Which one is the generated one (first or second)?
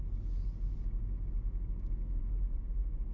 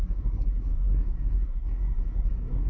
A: second